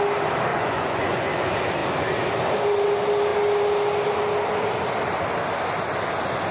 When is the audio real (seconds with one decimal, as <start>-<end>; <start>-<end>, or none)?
0.0-0.5; 1.3-6.5

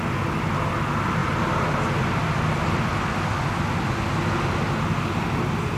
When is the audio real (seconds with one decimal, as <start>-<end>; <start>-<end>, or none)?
0.0-5.8

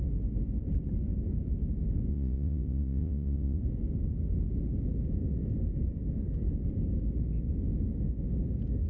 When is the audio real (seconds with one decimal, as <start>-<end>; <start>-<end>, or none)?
0.0-2.1; 3.6-8.9

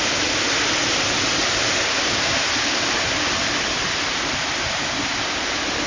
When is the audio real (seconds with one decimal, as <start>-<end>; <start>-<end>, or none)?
0.0-5.9

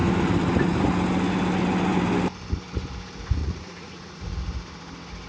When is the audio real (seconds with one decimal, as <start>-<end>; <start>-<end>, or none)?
0.0-3.4; 4.2-5.3

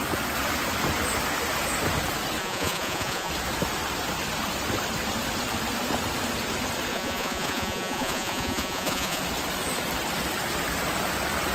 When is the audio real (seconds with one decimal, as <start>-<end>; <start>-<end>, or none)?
0.0-2.4; 3.3-6.9; 9.2-11.5

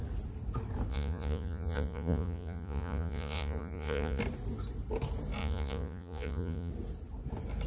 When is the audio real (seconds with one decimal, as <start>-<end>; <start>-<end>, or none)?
0.0-0.9; 4.2-5.4; 6.7-7.7